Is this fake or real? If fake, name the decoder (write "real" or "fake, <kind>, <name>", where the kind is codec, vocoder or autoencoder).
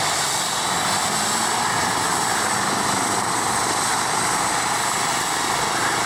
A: real